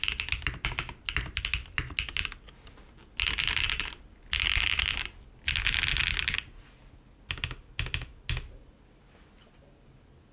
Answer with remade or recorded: recorded